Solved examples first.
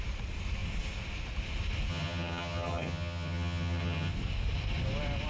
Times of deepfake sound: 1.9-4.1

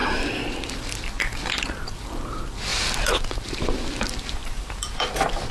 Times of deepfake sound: 0.0-2.7; 3.3-5.5